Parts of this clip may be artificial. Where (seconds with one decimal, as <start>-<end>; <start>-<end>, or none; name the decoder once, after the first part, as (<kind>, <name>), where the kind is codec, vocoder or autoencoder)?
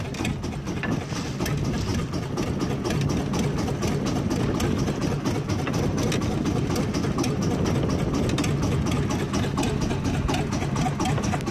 none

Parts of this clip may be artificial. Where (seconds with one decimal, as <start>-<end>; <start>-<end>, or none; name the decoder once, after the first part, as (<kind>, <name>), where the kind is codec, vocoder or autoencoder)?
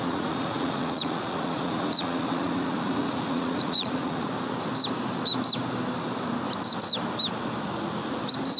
0.0-4.3 (vocoder, Vocos)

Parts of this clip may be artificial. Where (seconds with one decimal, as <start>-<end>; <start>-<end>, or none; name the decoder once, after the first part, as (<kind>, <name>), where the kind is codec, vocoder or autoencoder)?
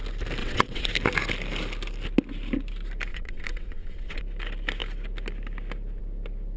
0.4-0.9 (vocoder, WaveNeXt); 3.1-4.2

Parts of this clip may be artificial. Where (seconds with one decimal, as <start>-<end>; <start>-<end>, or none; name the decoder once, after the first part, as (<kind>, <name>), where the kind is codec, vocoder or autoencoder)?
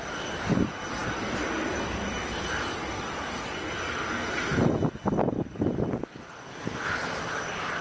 none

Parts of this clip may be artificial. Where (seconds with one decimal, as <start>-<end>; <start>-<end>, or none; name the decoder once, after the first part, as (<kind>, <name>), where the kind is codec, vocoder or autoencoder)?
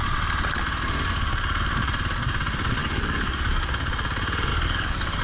2.8-3.7 (codec, DAC); 4.5-5.2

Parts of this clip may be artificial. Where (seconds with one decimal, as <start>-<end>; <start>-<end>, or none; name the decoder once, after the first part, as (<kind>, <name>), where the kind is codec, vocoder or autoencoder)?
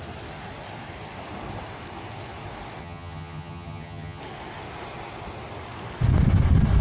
2.8-4.2 (vocoder, HiFi-GAN)